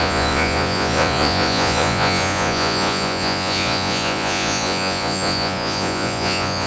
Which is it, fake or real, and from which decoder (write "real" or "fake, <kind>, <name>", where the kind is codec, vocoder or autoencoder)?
fake, vocoder, Vocos